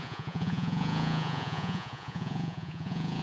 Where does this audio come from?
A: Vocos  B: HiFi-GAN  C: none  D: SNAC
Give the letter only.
A